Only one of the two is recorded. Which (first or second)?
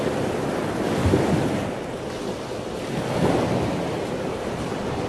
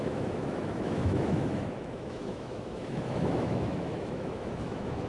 first